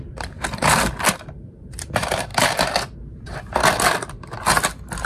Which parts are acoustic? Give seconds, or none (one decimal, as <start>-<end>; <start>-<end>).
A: 2.3-3.2; 3.6-5.0

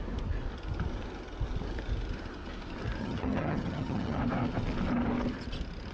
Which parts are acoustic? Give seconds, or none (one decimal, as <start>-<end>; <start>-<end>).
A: 0.0-3.0; 4.2-5.9

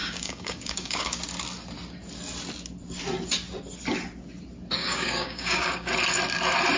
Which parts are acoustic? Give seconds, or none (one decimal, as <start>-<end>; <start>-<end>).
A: 1.2-4.8; 5.9-6.8

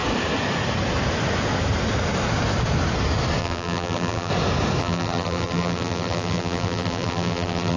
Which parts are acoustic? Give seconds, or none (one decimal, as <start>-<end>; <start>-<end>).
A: 0.0-3.4; 4.3-4.8

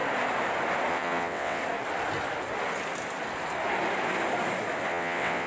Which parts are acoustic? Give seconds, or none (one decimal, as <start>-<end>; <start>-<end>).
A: 0.0-0.9; 1.6-4.9

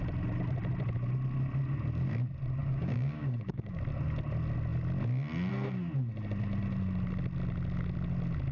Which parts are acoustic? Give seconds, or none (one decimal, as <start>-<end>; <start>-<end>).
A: 0.0-2.6; 3.8-8.5